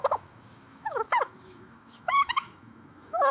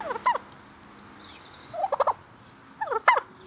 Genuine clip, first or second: second